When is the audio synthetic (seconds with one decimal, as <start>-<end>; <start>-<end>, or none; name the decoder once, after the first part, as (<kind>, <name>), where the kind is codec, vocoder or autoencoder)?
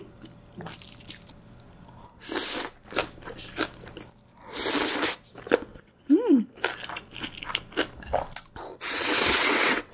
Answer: 5.7-6.4 (vocoder, WaveNeXt); 8.7-9.9